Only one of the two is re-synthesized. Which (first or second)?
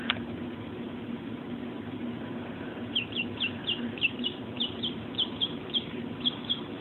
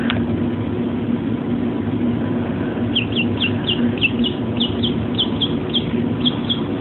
first